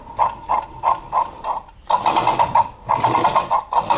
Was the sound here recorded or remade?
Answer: recorded